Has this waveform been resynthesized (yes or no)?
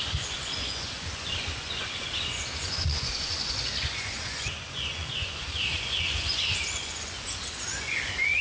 yes